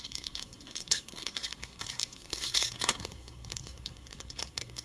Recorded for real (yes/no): no